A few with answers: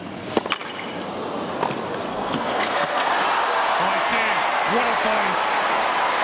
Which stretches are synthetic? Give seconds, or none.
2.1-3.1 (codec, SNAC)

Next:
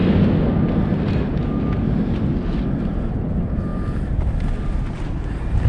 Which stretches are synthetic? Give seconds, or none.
none

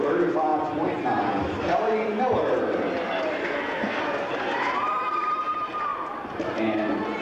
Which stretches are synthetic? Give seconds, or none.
3.4-4.0 (codec, SNAC)

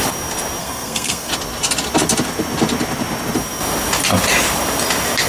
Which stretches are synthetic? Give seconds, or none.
0.6-1.3 (codec, SNAC)

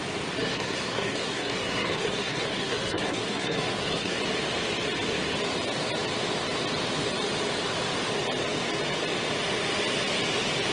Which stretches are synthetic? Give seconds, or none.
0.4-4.2 (codec, SNAC)

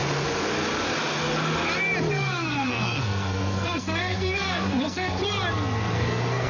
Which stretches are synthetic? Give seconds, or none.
2.1-5.2 (codec, SNAC); 5.9-6.5